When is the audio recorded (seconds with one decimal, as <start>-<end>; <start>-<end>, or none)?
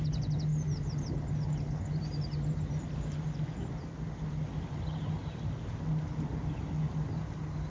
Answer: 0.0-7.7